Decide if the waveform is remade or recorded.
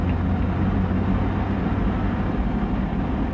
recorded